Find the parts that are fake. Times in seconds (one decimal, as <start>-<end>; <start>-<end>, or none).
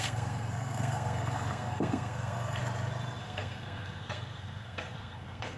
0.0-2.6; 3.2-5.6